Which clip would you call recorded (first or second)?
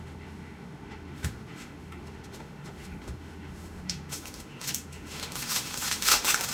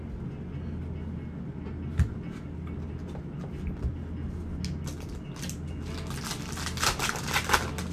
second